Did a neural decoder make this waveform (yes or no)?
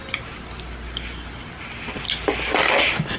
no